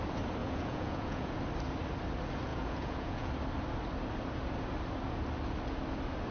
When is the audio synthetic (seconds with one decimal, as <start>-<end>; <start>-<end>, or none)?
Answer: 0.4-1.4; 2.5-3.3